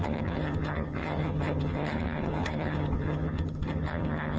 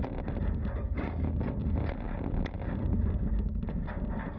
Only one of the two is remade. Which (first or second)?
first